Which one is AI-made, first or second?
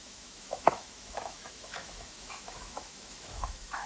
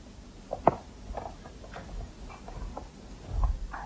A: first